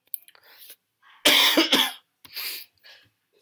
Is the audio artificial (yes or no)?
no